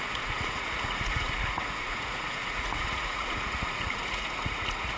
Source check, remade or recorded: remade